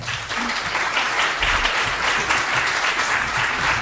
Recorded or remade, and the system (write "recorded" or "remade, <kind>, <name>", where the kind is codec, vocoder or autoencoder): remade, vocoder, BigVGAN v2